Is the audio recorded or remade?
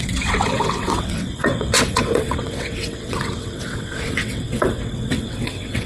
remade